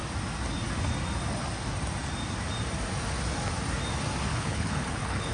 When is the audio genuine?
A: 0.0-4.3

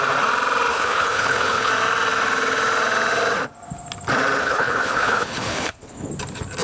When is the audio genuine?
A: 0.0-0.7; 1.7-4.4; 6.1-6.6

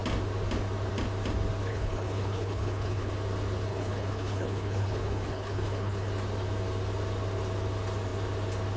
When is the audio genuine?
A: 0.0-1.7; 3.1-3.7; 6.1-8.8